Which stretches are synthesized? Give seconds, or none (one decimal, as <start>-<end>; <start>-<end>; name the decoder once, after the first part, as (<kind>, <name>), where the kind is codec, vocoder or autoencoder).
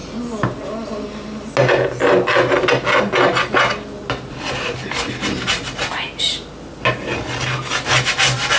none